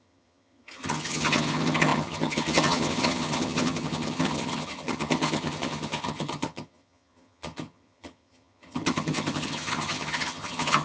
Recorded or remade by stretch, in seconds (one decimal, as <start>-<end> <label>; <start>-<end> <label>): 0.0-10.8 remade